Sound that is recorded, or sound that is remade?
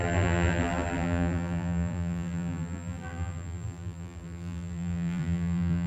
remade